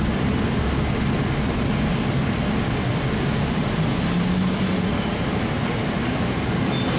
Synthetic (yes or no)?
no